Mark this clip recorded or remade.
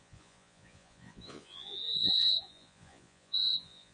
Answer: remade